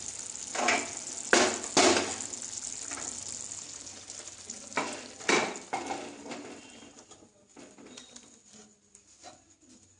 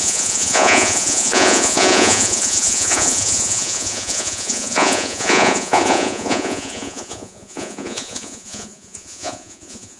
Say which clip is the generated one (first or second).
second